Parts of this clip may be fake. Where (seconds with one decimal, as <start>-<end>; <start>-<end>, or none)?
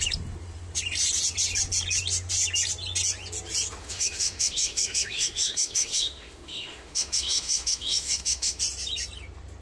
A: 3.8-8.6